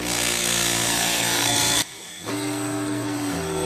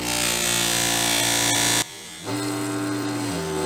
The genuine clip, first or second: second